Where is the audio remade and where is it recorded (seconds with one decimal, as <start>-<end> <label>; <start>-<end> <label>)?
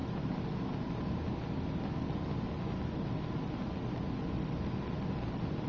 0.0-5.7 recorded